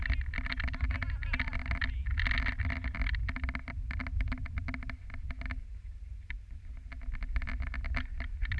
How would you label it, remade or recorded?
recorded